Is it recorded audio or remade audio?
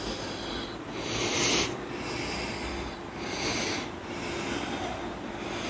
recorded